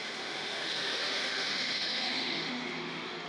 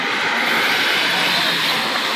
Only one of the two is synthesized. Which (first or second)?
first